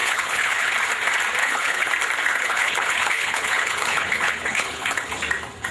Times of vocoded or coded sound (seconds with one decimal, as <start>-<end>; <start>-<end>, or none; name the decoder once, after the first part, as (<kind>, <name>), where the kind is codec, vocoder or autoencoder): 0.0-0.7 (codec, HILCodec); 1.4-1.9; 2.3-5.1